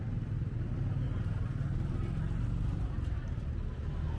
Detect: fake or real real